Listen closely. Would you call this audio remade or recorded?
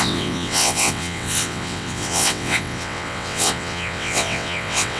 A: remade